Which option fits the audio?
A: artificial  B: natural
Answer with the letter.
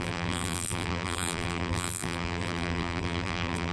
A